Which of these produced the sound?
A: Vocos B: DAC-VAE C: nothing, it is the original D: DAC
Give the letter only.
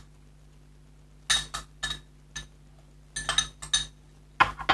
C